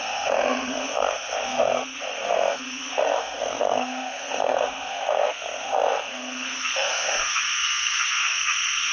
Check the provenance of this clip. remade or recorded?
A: remade